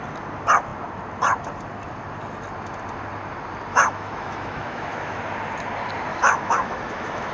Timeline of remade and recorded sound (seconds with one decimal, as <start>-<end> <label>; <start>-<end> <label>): 0.0-3.7 recorded; 3.7-5.2 remade; 5.2-6.1 recorded; 6.1-7.3 remade